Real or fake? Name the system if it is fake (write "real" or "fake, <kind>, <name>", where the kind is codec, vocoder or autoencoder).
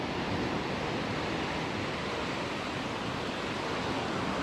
real